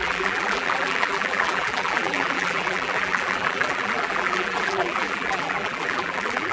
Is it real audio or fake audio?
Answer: fake